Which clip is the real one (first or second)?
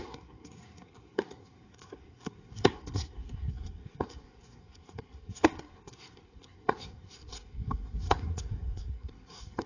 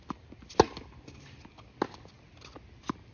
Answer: second